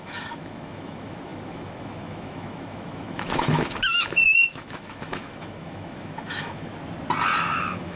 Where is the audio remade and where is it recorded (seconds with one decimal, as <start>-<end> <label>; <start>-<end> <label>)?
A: 0.0-6.7 remade; 6.7-7.5 recorded; 7.5-8.0 remade